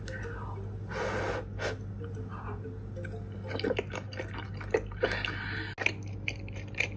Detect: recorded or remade recorded